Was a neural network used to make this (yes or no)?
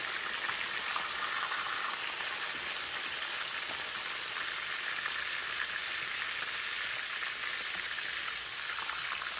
no